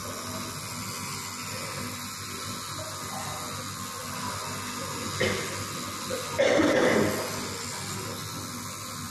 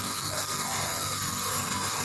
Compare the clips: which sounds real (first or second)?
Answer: first